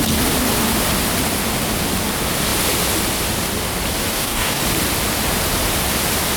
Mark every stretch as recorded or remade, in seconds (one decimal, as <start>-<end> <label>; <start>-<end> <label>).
0.0-4.1 recorded; 4.1-4.6 remade; 4.6-6.4 recorded